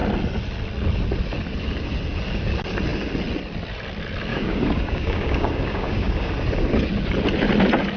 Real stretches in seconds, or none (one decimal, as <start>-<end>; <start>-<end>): 0.0-4.3; 6.3-8.0